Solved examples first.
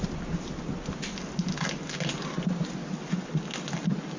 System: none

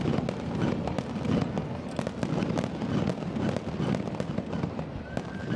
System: none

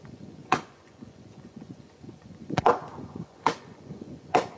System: vocoder, Vocos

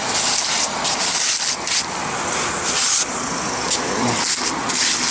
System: none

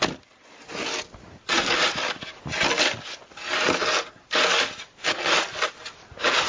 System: none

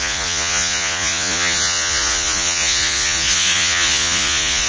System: vocoder, Vocos